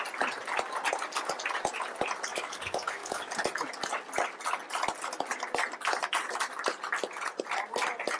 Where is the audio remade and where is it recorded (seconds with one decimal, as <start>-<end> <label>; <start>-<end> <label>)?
0.0-2.3 recorded; 2.3-3.3 remade; 3.3-8.2 recorded